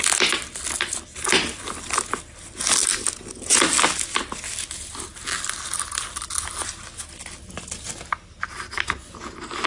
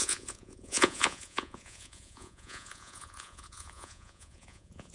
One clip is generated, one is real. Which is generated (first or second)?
second